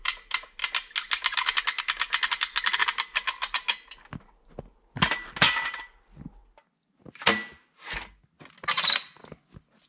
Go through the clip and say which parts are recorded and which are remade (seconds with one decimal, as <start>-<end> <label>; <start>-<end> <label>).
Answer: 0.0-9.9 recorded